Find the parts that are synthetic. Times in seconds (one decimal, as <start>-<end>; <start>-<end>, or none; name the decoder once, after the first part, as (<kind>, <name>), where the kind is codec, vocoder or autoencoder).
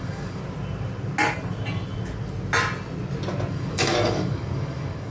0.0-0.4 (codec, DAC); 3.5-5.1